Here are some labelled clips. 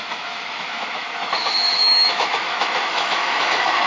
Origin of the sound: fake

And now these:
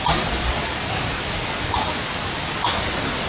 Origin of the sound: real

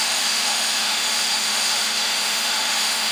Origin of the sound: fake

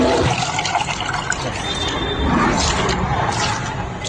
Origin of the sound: real